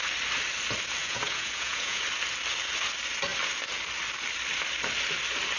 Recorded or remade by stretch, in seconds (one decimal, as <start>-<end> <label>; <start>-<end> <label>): 0.0-1.0 recorded; 1.0-2.0 remade; 2.0-5.6 recorded